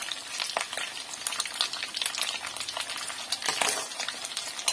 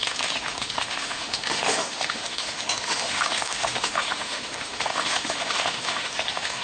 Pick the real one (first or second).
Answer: first